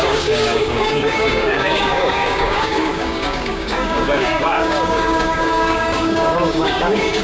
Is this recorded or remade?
remade